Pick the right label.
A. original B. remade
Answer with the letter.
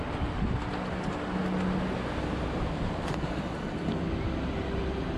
A